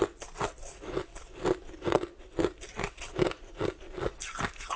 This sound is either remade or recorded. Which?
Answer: recorded